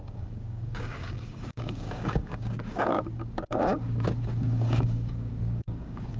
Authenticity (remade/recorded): remade